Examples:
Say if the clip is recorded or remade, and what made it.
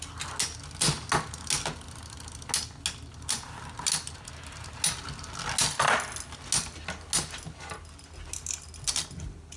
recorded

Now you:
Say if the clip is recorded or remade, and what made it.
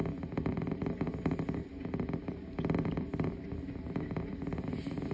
recorded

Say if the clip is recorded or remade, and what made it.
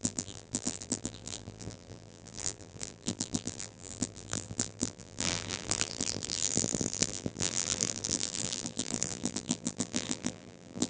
remade, vocoder, BigVGAN v2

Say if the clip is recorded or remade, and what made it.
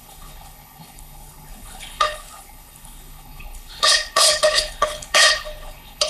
remade, codec, HILCodec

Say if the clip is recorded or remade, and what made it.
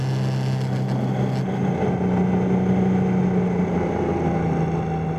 recorded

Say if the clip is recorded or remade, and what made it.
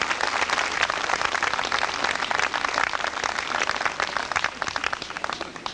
recorded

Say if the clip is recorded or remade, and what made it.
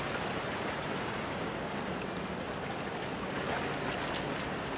recorded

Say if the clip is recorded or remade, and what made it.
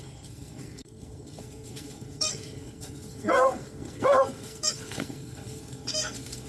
remade, codec, SNAC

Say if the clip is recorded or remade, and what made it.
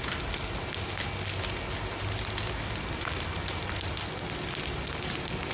recorded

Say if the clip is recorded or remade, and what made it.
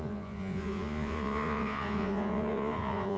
remade, vocoder, Vocos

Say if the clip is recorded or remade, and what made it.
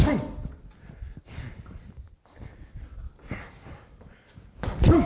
recorded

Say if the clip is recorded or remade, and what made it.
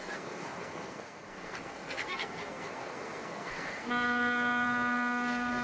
remade, codec, SNAC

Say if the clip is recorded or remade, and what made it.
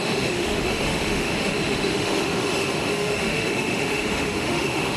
remade, autoencoder, DAC-VAE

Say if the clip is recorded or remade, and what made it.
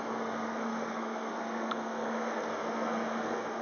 remade, codec, SNAC